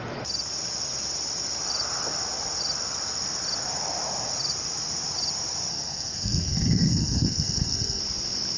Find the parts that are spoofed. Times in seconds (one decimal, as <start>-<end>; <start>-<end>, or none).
5.7-8.0